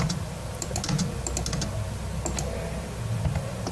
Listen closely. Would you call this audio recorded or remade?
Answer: recorded